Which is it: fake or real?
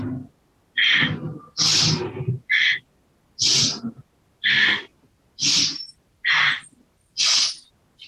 real